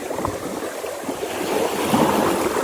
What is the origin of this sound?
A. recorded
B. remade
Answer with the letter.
A